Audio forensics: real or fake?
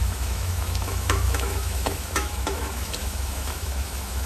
fake